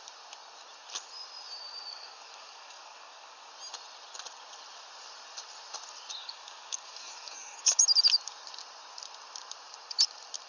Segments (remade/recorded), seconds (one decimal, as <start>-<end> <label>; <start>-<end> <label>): 0.0-1.9 recorded; 1.9-3.5 remade; 3.5-6.2 recorded; 6.2-7.8 remade; 7.8-10.5 recorded